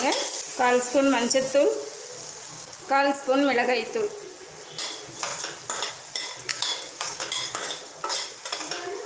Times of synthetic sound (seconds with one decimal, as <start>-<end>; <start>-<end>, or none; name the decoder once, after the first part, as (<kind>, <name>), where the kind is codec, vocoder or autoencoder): 2.1-2.9 (codec, DAC); 6.5-7.9